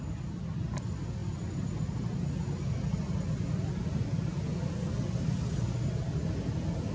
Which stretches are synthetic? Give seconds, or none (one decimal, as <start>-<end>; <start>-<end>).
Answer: none